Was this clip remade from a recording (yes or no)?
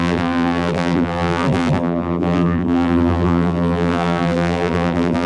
yes